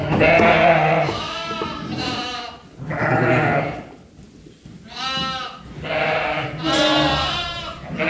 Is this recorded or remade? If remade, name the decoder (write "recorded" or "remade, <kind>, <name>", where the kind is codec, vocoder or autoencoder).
recorded